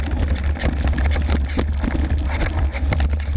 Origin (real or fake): real